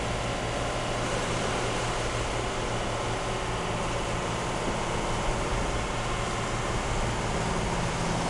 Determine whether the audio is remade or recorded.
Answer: recorded